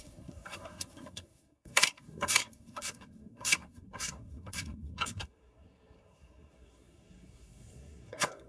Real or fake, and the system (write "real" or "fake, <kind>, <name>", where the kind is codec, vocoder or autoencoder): fake, codec, SNAC